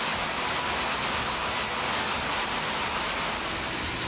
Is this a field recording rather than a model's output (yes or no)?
yes